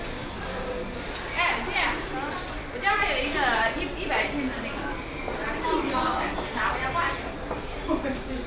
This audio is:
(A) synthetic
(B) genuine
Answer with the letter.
B